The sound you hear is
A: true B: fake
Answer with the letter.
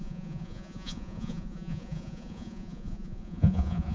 B